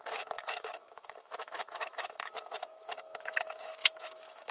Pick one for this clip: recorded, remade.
remade